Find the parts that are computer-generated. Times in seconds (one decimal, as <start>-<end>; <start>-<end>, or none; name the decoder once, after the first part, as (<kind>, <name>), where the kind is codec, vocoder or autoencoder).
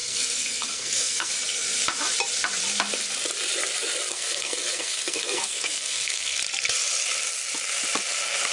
0.0-1.3 (codec, SNAC); 4.1-6.4